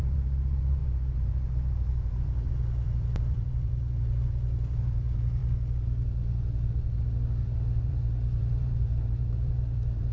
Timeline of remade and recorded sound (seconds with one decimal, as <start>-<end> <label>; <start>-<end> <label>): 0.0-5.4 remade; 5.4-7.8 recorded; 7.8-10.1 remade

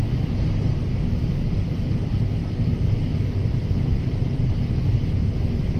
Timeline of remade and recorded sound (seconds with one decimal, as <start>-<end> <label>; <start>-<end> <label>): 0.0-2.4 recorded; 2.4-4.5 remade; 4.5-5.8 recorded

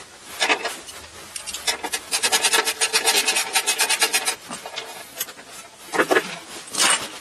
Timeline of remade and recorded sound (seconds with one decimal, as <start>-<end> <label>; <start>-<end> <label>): 0.0-7.2 recorded